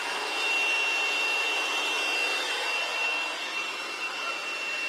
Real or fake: real